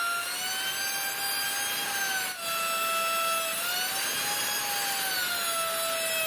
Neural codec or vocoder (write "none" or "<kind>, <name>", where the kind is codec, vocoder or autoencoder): none